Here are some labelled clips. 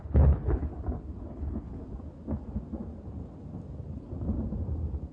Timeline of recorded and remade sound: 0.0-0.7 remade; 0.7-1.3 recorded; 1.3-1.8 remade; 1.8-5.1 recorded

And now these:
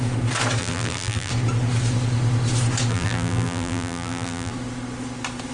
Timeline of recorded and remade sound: 0.0-0.6 recorded; 0.6-1.3 remade; 1.3-2.9 recorded; 2.9-4.5 remade; 4.5-5.5 recorded

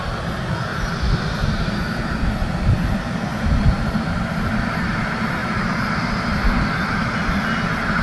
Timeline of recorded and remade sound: 0.0-0.7 recorded; 0.7-1.2 remade; 1.2-3.3 recorded; 3.3-5.0 remade; 5.0-5.4 recorded; 5.4-6.9 remade; 6.9-8.0 recorded

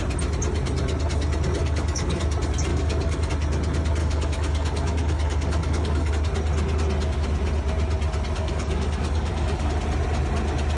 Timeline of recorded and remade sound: 0.0-1.6 recorded; 1.6-2.2 remade; 2.2-2.7 recorded; 2.7-3.3 remade; 3.3-4.0 recorded; 4.0-6.1 remade; 6.1-8.4 recorded; 8.4-9.7 remade; 9.7-10.8 recorded

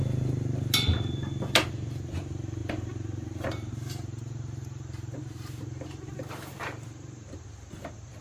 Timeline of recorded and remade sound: 0.0-1.7 recorded; 1.7-8.2 remade

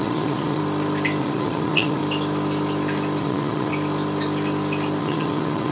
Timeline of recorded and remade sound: 0.0-0.6 remade; 0.6-1.2 recorded; 1.2-2.0 remade; 2.0-3.2 recorded; 3.2-3.7 remade; 3.7-5.0 recorded; 5.0-5.7 remade